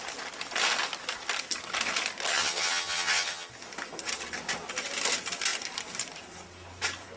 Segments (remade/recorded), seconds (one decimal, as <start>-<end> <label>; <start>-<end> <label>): 0.0-2.3 recorded; 2.3-3.5 remade; 3.5-7.2 recorded